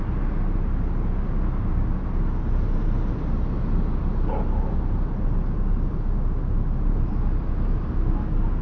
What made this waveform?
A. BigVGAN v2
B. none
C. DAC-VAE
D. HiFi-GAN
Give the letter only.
B